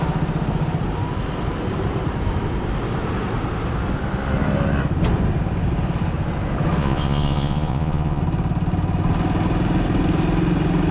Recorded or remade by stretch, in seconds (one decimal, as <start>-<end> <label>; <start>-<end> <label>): 0.0-6.8 recorded; 6.8-8.2 remade; 8.2-10.9 recorded